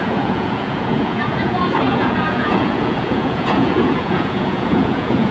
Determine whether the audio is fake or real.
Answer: fake